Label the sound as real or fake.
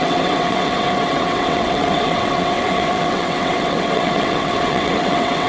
fake